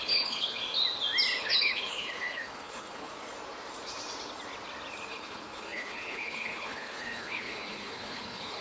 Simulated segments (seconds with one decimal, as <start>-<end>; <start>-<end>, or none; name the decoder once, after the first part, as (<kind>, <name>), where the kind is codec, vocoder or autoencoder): 0.0-0.6 (codec, HILCodec); 1.4-3.1; 5.1-8.6